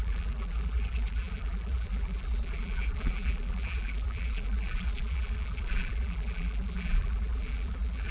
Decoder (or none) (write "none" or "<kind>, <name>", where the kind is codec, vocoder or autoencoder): vocoder, BigVGAN v2